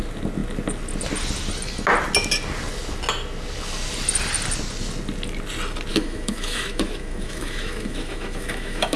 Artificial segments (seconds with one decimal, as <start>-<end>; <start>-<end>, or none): 5.9-9.0